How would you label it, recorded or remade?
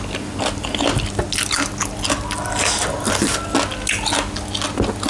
recorded